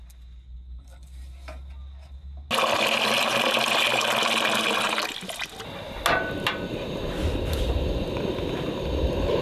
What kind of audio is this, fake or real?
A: real